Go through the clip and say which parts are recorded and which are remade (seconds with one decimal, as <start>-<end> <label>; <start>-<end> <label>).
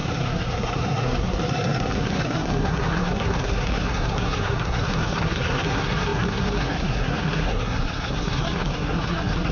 0.0-9.5 remade